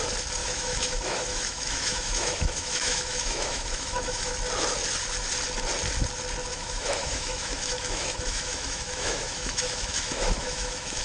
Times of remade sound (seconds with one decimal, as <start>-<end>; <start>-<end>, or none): 0.4-4.3; 6.5-11.0